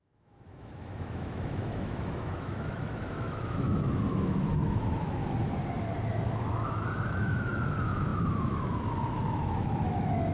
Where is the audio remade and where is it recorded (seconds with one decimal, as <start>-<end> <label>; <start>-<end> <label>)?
0.0-5.2 remade; 5.2-6.1 recorded; 6.1-10.3 remade